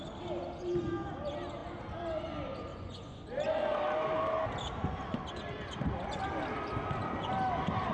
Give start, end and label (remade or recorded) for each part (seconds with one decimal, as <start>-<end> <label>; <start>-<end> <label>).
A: 0.0-2.7 recorded; 2.7-3.2 remade; 3.2-7.9 recorded